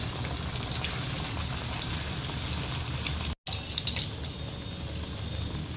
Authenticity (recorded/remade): recorded